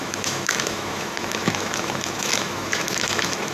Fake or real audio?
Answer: fake